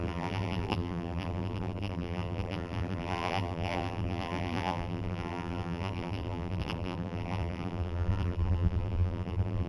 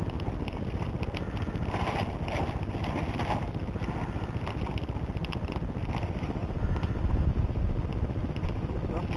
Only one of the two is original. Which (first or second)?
second